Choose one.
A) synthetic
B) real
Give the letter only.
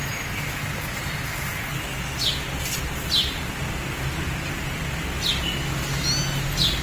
B